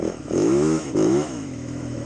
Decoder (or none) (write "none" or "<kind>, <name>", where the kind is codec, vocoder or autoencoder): autoencoder, DAC-VAE